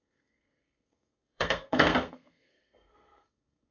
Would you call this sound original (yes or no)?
no